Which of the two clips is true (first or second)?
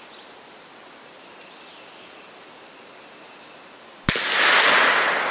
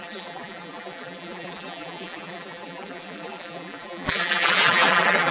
first